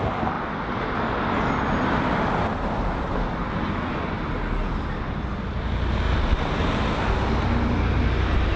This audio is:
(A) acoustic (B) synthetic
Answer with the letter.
A